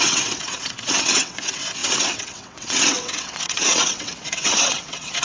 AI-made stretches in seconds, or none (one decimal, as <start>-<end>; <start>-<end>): 0.0-5.2